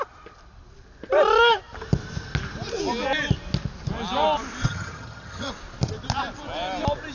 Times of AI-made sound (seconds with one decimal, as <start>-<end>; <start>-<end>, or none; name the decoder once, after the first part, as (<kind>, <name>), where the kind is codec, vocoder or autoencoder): 4.6-5.5 (vocoder, HiFi-GAN)